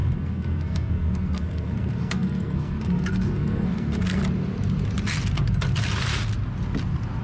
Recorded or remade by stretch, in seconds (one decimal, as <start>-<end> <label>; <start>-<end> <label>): 0.0-4.2 remade; 4.2-7.2 recorded